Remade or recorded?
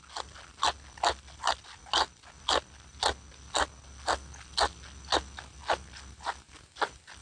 recorded